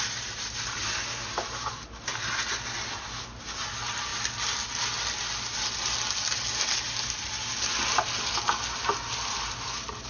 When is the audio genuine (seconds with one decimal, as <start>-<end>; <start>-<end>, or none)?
0.0-10.1